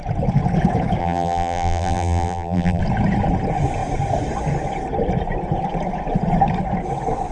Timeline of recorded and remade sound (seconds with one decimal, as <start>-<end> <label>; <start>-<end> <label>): 0.0-1.0 recorded; 1.0-2.8 remade; 2.8-7.3 recorded